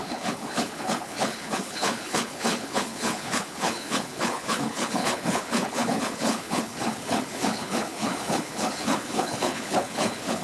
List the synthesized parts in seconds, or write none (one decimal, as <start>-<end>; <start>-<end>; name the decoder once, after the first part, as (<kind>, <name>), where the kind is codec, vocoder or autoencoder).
0.0-10.4 (codec, HILCodec)